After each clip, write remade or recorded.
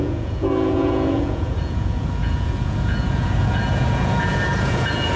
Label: remade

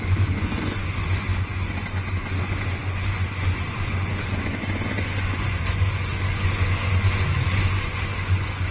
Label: remade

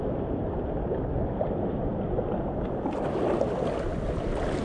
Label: recorded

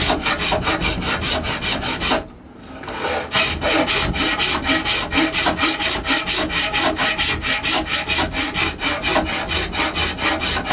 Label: recorded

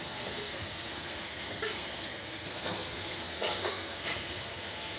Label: remade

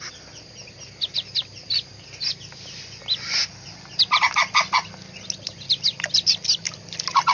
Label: recorded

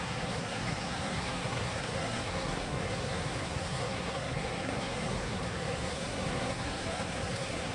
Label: remade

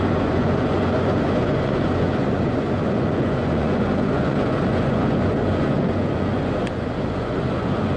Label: remade